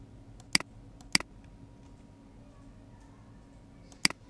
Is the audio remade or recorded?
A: recorded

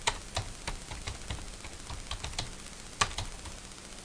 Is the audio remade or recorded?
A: recorded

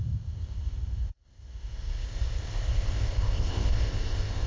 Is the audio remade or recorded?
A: remade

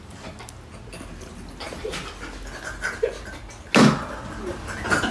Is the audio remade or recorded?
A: recorded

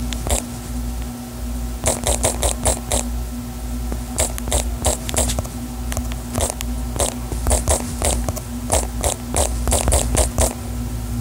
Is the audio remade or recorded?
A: recorded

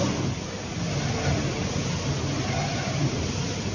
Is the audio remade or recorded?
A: recorded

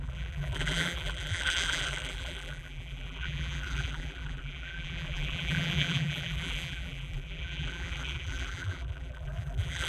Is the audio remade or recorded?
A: remade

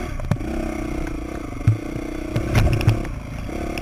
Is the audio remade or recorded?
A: recorded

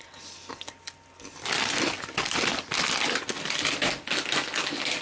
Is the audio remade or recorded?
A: recorded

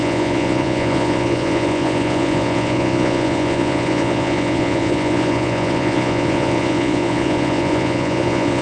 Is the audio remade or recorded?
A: remade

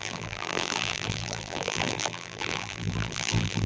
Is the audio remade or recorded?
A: remade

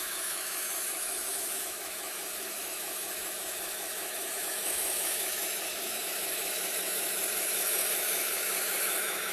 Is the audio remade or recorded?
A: remade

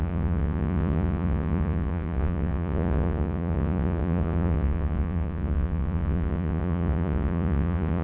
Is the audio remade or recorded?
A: remade